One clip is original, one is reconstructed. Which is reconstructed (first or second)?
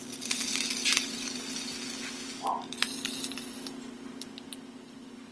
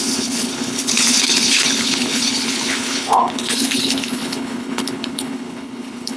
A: second